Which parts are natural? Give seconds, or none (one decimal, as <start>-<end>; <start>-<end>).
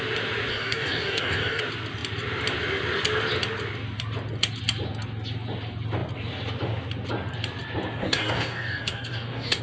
0.0-0.5; 1.6-8.0